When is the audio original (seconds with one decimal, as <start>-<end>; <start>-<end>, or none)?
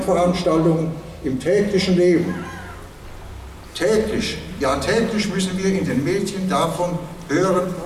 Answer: 0.0-7.9